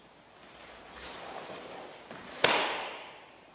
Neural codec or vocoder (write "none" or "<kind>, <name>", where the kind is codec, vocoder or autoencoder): vocoder, BigVGAN v2